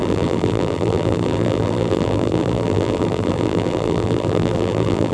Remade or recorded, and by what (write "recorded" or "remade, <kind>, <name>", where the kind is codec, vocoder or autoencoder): remade, vocoder, BigVGAN v2